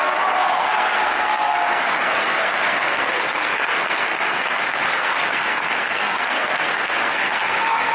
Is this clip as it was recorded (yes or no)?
no